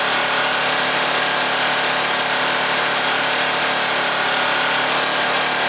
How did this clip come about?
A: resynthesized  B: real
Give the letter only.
B